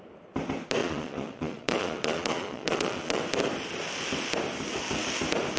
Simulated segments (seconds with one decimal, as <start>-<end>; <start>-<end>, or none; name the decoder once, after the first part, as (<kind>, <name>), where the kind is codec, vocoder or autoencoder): 0.8-3.2 (vocoder, Vocos)